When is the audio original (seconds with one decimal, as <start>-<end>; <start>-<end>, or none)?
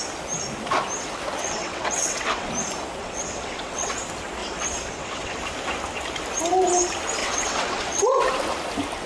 0.0-1.4; 2.5-3.0; 4.0-4.4; 5.4-7.2; 8.2-9.1